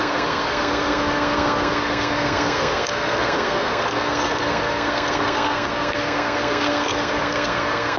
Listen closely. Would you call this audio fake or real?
fake